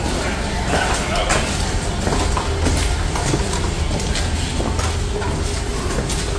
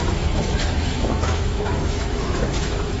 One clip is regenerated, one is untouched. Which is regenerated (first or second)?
second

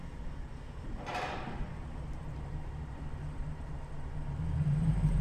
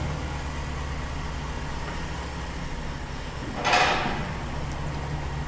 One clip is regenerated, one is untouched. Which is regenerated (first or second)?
first